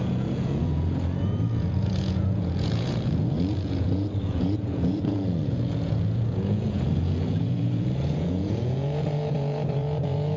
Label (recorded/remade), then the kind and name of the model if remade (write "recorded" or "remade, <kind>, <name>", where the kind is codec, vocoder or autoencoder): remade, vocoder, Vocos